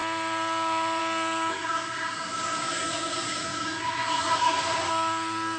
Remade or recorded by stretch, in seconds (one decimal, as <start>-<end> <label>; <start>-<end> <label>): 0.0-1.5 recorded; 1.5-4.9 remade; 4.9-5.6 recorded